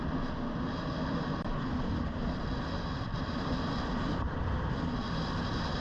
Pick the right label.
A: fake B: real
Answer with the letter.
B